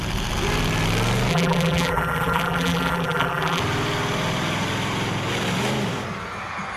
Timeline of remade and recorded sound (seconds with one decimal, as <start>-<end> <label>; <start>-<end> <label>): 0.0-1.3 recorded; 1.3-3.6 remade; 3.6-6.8 recorded